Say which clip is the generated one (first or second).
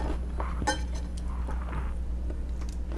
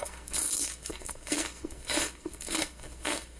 second